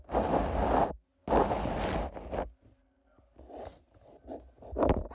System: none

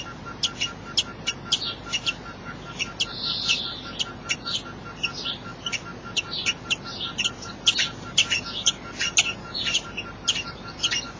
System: none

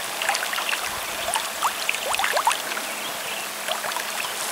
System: none